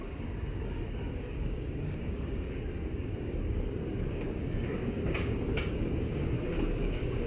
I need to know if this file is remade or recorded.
remade